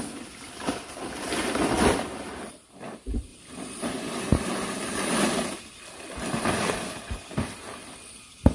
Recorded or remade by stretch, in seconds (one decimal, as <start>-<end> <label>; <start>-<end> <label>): 0.0-3.3 remade; 3.3-3.8 recorded; 3.8-4.3 remade; 4.3-6.5 recorded; 6.5-8.5 remade